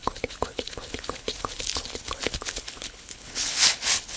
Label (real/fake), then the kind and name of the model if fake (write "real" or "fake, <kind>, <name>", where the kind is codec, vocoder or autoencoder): fake, codec, HILCodec